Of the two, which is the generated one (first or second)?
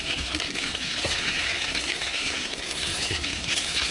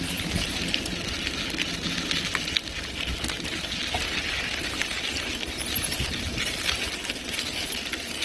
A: first